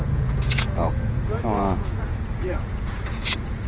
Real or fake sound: fake